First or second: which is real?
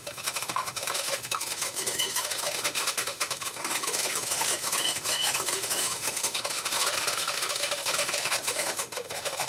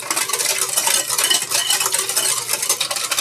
second